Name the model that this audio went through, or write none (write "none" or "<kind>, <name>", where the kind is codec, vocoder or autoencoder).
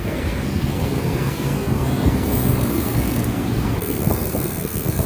codec, SNAC